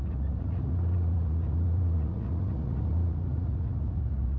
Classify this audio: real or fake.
fake